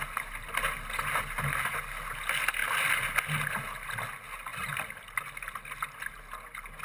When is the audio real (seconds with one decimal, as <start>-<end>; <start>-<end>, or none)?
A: 0.0-6.8